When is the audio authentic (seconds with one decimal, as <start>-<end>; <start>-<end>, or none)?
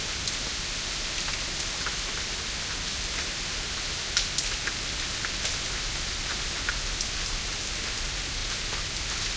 0.0-9.4